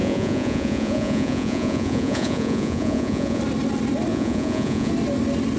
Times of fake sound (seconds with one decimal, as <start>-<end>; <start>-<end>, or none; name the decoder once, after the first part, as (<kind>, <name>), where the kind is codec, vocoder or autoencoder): 0.0-3.4 (vocoder, Vocos); 4.1-4.9